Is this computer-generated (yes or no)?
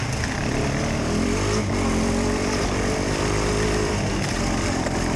yes